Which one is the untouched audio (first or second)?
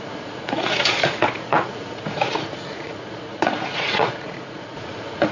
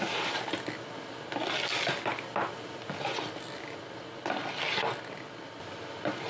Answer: second